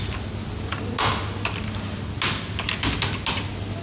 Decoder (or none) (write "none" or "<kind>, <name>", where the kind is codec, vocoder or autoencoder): none